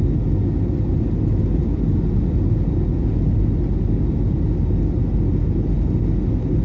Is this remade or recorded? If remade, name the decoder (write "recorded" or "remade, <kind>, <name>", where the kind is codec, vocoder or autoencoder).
recorded